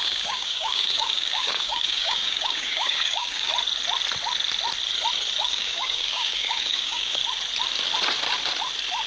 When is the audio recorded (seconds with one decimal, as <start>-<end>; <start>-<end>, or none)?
3.5-5.4; 7.2-9.1